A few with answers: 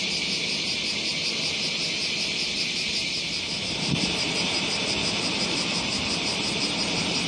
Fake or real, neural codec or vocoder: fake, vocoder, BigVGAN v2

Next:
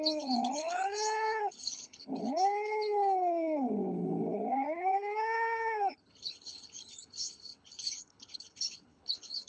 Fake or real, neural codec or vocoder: fake, codec, HILCodec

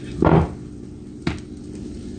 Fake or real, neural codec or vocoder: real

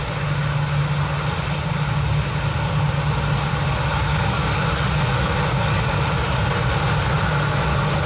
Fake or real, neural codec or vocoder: real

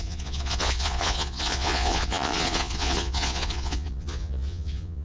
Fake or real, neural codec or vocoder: fake, vocoder, Vocos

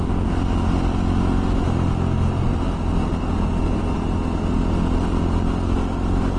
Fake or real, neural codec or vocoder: real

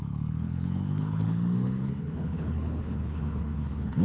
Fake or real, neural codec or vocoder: fake, codec, HILCodec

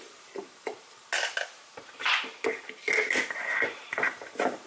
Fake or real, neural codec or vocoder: real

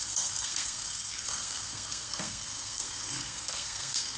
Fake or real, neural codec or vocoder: fake, codec, SNAC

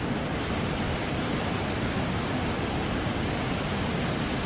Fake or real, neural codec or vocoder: real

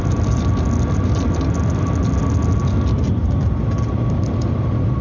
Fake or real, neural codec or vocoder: real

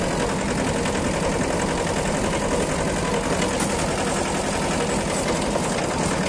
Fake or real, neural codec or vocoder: real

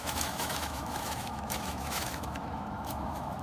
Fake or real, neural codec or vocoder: fake, autoencoder, DAC-VAE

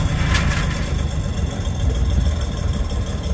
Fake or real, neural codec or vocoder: real